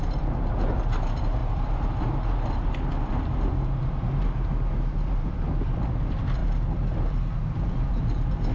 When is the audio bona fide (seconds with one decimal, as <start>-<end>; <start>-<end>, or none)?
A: 0.0-8.5